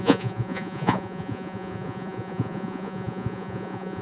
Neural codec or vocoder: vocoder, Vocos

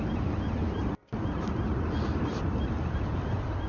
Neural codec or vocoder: none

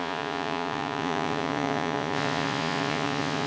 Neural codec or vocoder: vocoder, Vocos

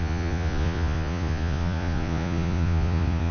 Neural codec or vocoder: vocoder, Vocos